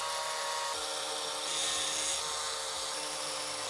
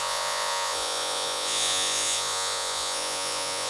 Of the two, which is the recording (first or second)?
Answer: first